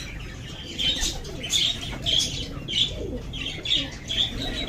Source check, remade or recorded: recorded